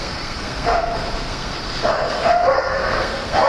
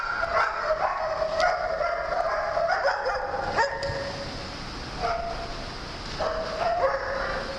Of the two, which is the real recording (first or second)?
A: second